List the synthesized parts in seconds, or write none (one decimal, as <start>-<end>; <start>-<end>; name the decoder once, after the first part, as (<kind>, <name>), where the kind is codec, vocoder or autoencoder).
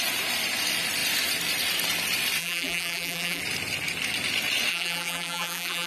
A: 2.4-3.4 (vocoder, BigVGAN v2); 4.7-5.9